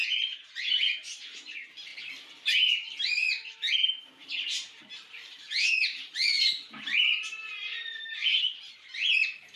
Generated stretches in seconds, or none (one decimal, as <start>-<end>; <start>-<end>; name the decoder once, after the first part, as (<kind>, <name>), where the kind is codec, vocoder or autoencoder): 0.0-1.9 (vocoder, BigVGAN v2); 2.7-9.6